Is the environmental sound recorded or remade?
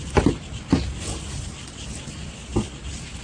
recorded